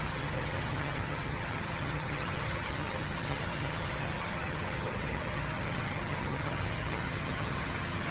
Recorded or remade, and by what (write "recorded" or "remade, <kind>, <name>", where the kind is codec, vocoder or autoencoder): remade, vocoder, HiFi-GAN